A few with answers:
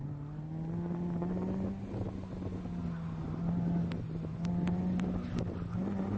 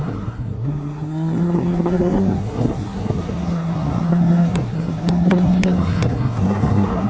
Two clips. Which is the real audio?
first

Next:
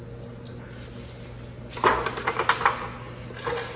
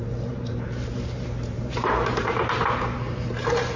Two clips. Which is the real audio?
first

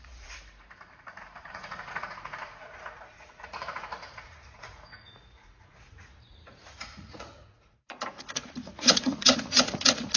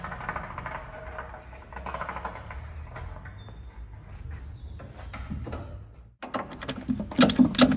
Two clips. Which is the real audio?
second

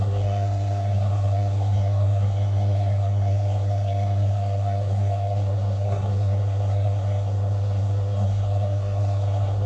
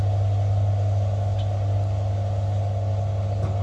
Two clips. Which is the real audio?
second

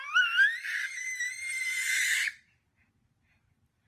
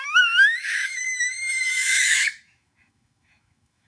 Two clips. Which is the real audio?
first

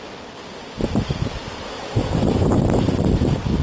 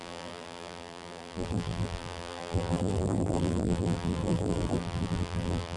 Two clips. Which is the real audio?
first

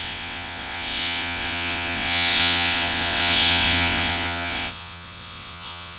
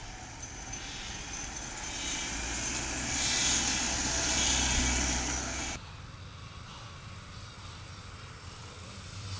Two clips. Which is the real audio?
second